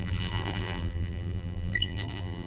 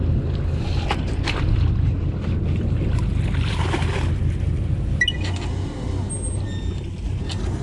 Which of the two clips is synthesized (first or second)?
first